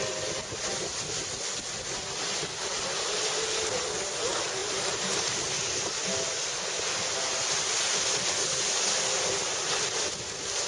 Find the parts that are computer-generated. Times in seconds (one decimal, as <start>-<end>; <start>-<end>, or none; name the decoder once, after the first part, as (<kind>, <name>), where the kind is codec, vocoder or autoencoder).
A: 4.6-5.4 (vocoder, BigVGAN v2)